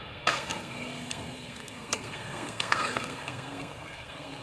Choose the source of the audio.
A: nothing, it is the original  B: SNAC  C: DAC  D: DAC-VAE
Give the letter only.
B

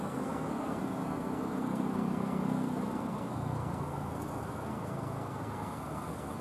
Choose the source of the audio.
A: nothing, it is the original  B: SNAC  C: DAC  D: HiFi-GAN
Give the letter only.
B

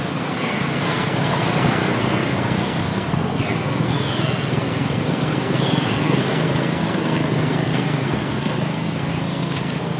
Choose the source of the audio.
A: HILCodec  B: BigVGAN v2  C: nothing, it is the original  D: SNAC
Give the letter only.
D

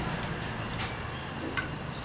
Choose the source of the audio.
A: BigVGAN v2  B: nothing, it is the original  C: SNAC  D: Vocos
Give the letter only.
B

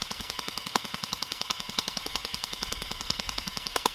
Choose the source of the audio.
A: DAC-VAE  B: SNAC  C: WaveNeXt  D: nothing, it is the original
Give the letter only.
B